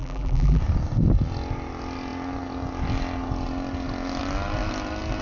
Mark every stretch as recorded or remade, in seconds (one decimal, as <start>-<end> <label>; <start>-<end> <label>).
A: 0.0-0.6 remade; 0.6-5.2 recorded